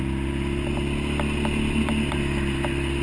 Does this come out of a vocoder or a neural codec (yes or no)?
no